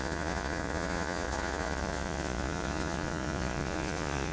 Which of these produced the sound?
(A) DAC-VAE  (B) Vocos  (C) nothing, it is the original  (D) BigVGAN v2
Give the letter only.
B